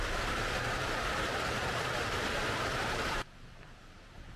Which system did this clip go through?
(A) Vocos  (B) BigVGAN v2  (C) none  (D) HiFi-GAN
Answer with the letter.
B